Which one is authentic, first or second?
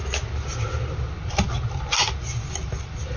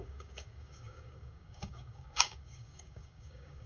first